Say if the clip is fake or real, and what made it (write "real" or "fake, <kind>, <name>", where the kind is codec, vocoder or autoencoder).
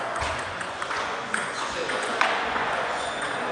fake, vocoder, Vocos